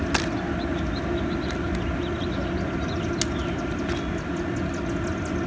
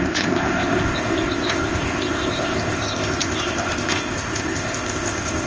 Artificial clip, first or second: second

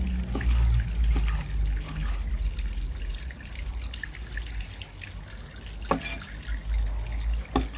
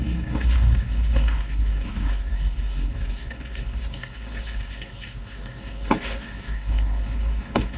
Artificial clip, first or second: second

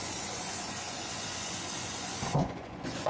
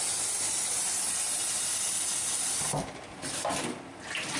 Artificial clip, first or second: first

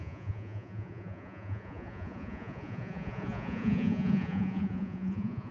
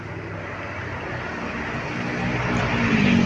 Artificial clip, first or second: first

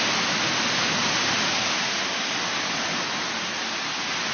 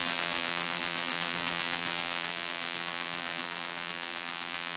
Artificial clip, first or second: second